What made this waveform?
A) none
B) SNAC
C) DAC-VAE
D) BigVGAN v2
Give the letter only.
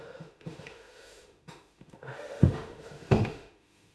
C